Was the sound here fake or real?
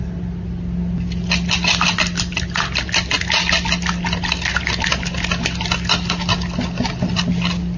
real